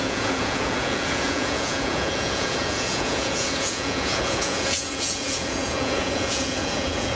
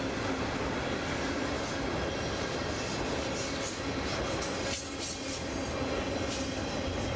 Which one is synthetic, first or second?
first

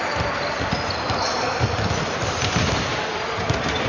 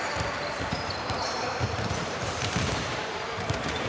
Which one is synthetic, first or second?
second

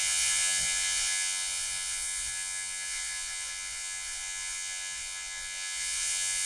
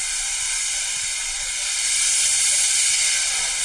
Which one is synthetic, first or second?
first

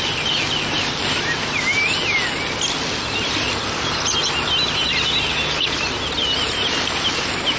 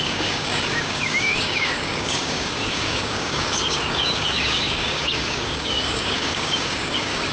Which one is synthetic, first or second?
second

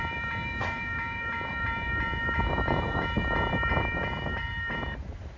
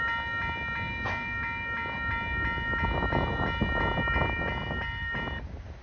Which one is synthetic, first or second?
first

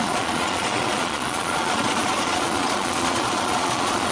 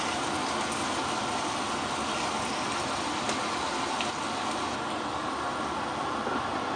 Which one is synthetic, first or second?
first